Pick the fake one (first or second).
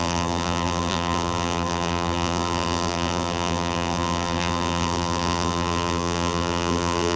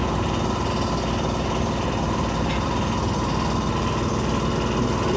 first